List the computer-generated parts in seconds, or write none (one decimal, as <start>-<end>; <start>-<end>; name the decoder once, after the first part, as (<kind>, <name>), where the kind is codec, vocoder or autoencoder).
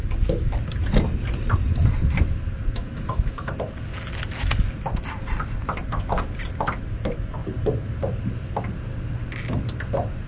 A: 2.8-3.5 (autoencoder, DAC-VAE)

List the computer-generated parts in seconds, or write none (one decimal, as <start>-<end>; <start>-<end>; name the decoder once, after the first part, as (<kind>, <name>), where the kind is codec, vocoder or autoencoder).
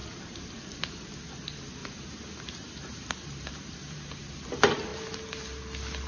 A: 0.0-0.8 (vocoder, BigVGAN v2); 1.8-4.5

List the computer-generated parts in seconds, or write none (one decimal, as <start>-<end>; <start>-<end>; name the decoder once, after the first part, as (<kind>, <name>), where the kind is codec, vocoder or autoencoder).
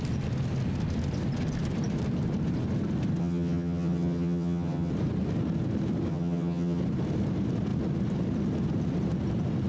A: 3.2-4.9 (vocoder, HiFi-GAN); 6.1-6.8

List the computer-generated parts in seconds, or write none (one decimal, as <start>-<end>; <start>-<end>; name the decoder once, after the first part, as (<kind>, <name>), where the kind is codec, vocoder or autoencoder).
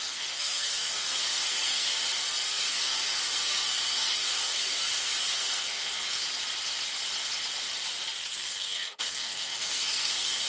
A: 0.0-1.9 (codec, SNAC); 2.5-6.2; 8.2-10.5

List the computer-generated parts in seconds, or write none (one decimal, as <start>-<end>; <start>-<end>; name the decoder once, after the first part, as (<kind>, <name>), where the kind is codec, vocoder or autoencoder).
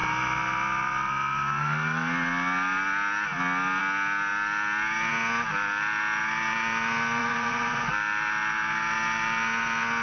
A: 7.2-7.9 (vocoder, Vocos)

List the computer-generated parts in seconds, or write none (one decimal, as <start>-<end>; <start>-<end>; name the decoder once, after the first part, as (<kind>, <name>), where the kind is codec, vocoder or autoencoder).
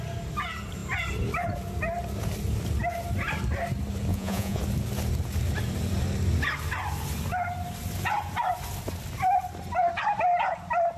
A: 4.1-4.6 (vocoder, Vocos)